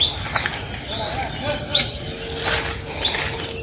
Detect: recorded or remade recorded